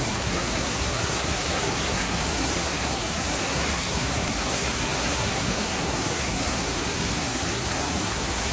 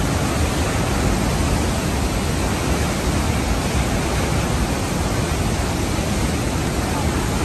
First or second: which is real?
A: second